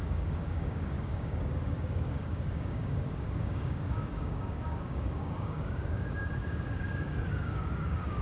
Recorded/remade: remade